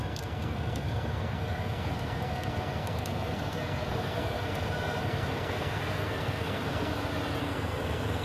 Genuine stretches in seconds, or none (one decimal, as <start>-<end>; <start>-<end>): 6.9-7.4